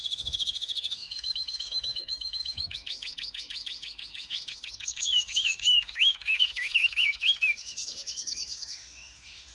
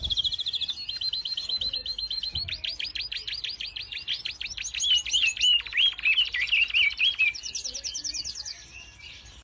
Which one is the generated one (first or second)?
first